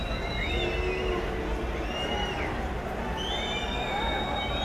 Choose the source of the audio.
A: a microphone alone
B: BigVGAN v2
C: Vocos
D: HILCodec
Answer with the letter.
A